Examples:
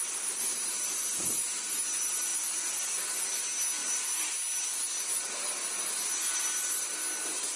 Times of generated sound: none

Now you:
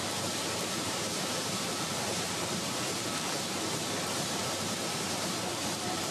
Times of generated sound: 0.0-6.1 (vocoder, BigVGAN v2)

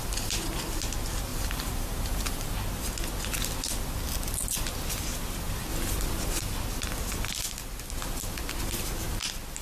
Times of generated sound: 1.3-2.5 (vocoder, BigVGAN v2)

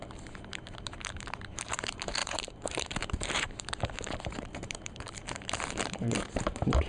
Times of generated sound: 0.0-6.9 (vocoder, BigVGAN v2)

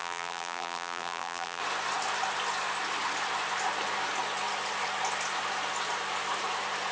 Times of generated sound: 0.0-1.6 (vocoder, BigVGAN v2)

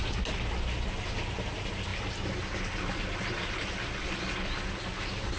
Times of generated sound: none

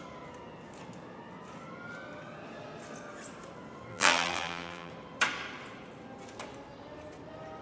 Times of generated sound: 3.9-4.9 (vocoder, BigVGAN v2)

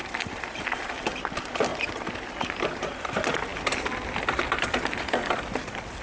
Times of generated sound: 0.0-1.7 (vocoder, BigVGAN v2); 2.5-3.5; 5.3-6.0